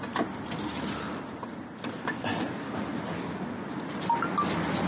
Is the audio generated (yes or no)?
no